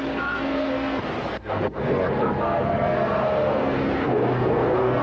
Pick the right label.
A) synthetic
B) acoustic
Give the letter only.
A